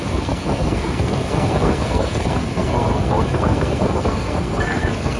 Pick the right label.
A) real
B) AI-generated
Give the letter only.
B